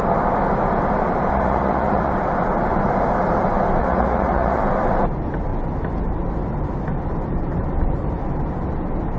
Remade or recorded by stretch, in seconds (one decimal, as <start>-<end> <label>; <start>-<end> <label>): 0.0-1.3 recorded; 1.3-2.1 remade; 2.1-3.8 recorded; 3.8-4.6 remade; 4.6-9.2 recorded